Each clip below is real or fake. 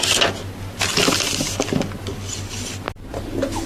real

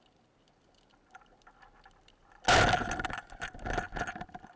real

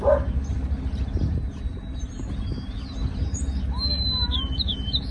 real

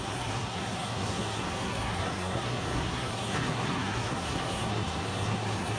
fake